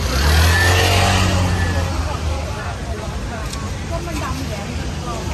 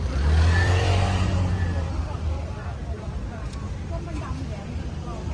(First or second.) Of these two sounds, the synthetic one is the second